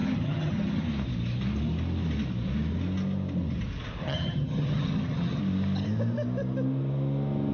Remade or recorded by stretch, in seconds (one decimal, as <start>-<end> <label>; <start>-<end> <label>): 0.0-0.8 remade; 0.8-4.0 recorded; 4.0-5.4 remade; 5.4-7.5 recorded